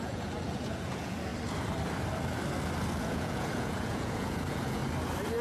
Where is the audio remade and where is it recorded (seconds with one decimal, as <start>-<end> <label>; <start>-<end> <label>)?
0.0-1.3 remade; 1.3-3.0 recorded; 3.0-4.8 remade; 4.8-5.4 recorded